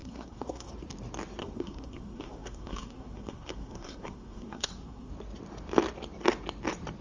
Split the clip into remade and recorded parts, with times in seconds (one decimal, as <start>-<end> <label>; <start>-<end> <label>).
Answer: 0.0-0.7 remade; 0.7-1.4 recorded; 1.4-5.1 remade; 5.1-7.0 recorded